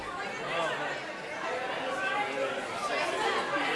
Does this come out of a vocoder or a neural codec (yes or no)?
no